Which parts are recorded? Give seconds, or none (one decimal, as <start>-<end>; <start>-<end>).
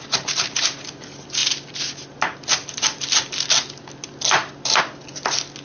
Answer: 0.0-5.6